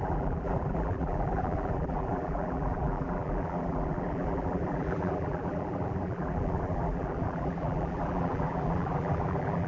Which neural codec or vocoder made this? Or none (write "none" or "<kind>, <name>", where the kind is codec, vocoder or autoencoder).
vocoder, BigVGAN v2